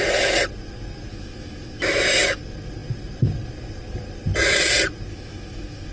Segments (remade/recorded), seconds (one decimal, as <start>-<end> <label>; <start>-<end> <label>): 0.0-1.1 recorded; 1.1-2.4 remade; 2.4-5.1 recorded; 5.1-5.9 remade